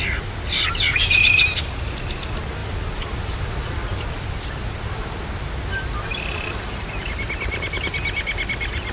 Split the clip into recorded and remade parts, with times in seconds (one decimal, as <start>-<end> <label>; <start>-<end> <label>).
0.0-2.6 recorded; 2.6-3.7 remade; 3.7-8.9 recorded